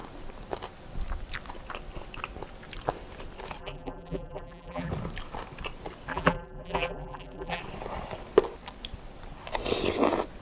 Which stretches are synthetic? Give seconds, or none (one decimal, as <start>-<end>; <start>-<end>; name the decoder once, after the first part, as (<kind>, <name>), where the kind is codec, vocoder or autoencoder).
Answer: 3.6-4.9 (vocoder, BigVGAN v2); 6.1-7.6